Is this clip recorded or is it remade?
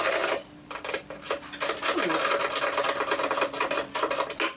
recorded